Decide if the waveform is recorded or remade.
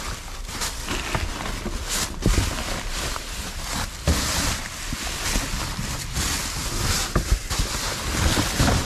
recorded